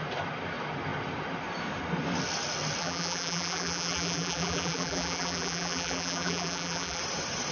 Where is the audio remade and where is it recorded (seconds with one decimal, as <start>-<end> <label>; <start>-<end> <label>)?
0.0-2.8 recorded; 2.8-7.0 remade; 7.0-7.5 recorded